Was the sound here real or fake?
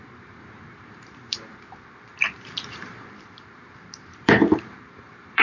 fake